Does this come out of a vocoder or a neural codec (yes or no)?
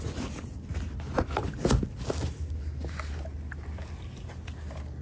no